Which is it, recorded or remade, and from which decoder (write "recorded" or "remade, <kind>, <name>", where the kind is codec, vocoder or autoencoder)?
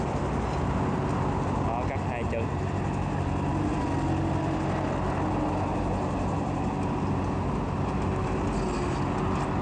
recorded